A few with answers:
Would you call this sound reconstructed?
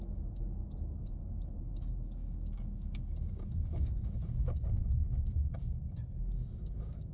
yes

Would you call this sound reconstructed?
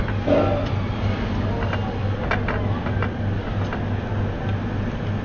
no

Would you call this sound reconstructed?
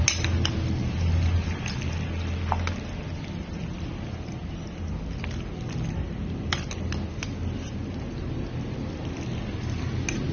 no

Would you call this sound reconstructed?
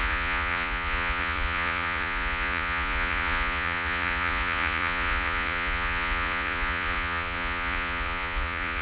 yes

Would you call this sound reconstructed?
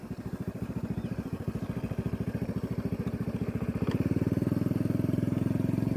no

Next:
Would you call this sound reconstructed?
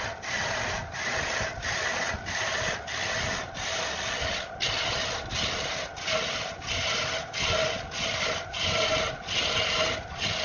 no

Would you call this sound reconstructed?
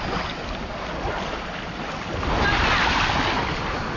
no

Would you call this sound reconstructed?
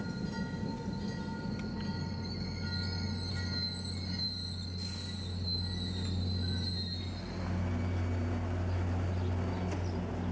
no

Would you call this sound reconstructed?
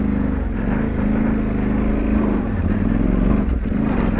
no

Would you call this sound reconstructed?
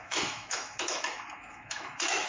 yes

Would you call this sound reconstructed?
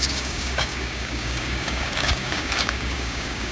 yes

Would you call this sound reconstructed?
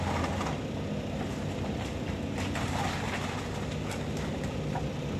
no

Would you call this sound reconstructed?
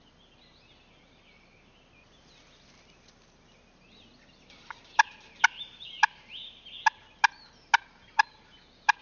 no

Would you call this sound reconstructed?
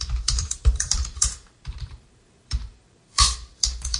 yes